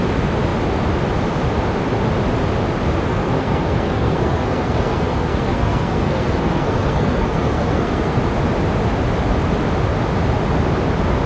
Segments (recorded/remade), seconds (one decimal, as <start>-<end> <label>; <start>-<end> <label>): 0.0-3.1 recorded; 3.1-8.2 remade; 8.2-11.3 recorded